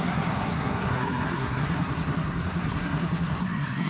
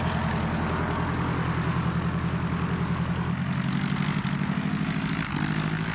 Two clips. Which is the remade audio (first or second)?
first